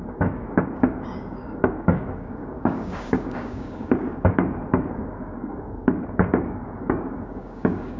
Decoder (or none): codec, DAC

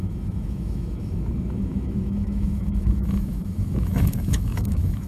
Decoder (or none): autoencoder, DAC-VAE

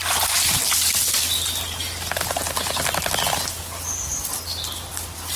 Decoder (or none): none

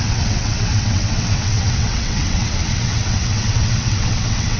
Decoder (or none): vocoder, WaveNeXt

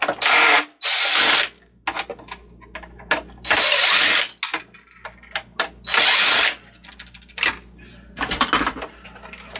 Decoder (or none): none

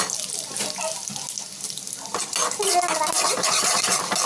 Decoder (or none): none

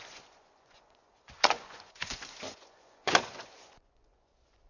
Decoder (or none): vocoder, Vocos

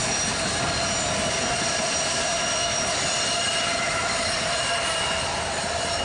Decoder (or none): none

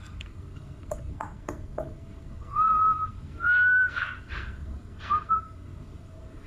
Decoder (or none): codec, SNAC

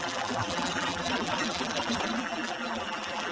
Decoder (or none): vocoder, BigVGAN v2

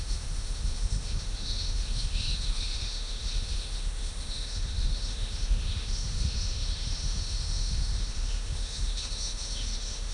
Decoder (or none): autoencoder, DAC-VAE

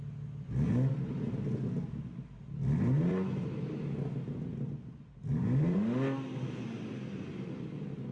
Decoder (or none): none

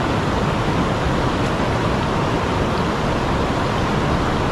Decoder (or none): none